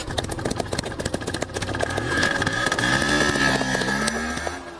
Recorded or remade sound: recorded